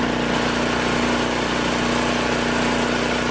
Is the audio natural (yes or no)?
yes